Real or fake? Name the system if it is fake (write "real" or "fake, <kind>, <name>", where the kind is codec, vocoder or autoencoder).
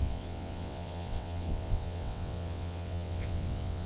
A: fake, vocoder, WaveNeXt